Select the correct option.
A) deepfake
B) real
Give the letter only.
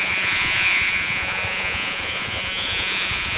A